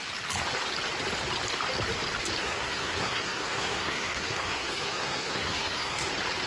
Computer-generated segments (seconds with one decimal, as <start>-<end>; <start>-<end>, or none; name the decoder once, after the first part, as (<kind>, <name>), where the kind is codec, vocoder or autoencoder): 2.4-6.1 (codec, SNAC)